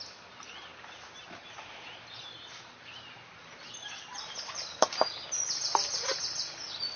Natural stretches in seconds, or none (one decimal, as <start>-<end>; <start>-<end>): 0.0-0.7; 4.9-7.0